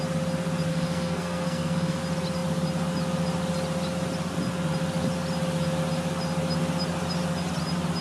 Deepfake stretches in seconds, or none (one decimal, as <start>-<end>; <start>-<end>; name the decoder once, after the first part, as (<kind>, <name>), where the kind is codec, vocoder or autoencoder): 0.7-2.0 (codec, SNAC)